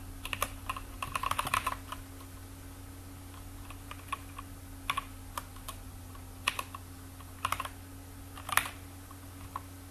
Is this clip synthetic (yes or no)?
no